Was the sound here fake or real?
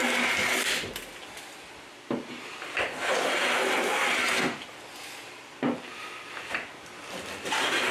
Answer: real